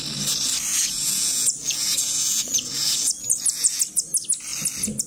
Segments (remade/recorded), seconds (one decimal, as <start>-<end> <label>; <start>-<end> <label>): 0.0-0.7 recorded; 0.7-3.8 remade; 3.8-5.1 recorded